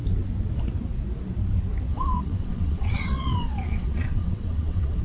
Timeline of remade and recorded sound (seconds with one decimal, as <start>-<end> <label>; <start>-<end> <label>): 0.0-1.9 recorded; 1.9-5.0 remade